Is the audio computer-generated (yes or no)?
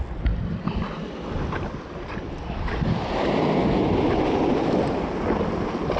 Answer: no